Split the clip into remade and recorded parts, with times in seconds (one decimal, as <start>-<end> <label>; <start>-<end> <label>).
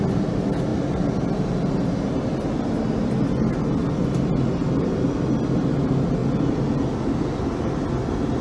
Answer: 0.0-8.4 recorded